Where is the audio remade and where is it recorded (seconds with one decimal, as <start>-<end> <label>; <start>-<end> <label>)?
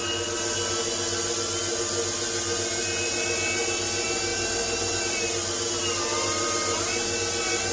0.0-7.7 recorded